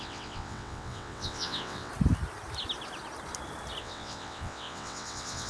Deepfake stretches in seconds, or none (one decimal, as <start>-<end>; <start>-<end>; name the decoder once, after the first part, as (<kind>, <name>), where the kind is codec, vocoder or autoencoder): 0.0-1.9 (vocoder, WaveNeXt); 3.8-5.5